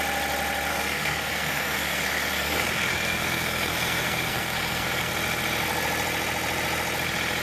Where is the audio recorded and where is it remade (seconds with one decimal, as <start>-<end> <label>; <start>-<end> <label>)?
0.0-0.7 recorded; 0.7-5.1 remade; 5.1-7.4 recorded